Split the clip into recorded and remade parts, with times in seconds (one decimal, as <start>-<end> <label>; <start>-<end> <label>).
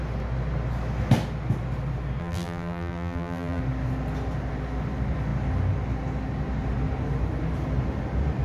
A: 0.0-2.2 recorded; 2.2-3.6 remade; 3.6-8.4 recorded